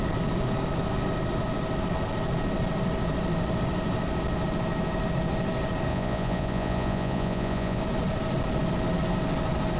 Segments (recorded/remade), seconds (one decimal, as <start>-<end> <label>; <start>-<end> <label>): 0.0-5.9 recorded; 5.9-7.8 remade; 7.8-9.8 recorded